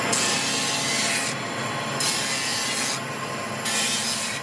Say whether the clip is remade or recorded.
recorded